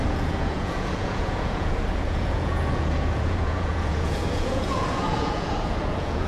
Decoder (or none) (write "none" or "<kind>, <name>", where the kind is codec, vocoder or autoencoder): vocoder, Vocos